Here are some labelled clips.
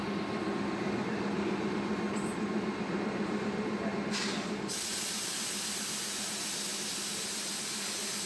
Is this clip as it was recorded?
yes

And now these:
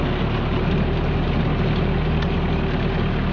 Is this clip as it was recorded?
yes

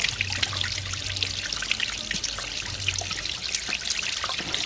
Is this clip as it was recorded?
yes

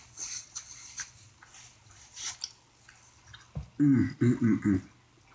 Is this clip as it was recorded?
yes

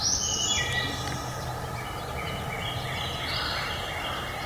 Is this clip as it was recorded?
yes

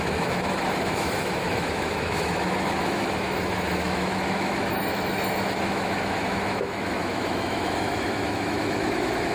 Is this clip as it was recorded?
no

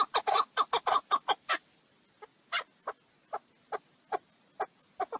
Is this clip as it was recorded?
yes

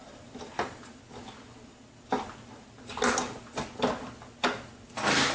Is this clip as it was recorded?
yes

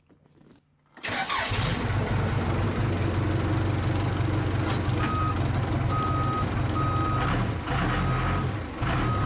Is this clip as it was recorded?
yes